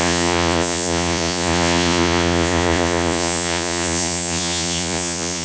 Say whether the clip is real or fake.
fake